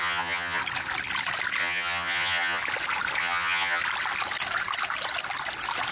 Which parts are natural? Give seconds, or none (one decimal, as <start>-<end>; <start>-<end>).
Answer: 0.6-1.6; 2.6-3.2; 3.8-5.9